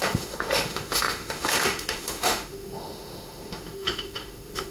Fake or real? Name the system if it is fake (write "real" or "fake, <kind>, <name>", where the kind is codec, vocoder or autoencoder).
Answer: fake, autoencoder, DAC-VAE